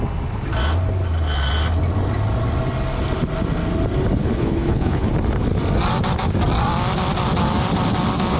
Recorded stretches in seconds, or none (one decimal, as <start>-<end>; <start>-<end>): 0.0-4.2; 5.1-8.4